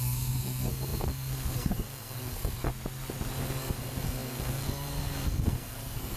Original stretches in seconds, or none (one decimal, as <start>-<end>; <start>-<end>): 2.7-3.6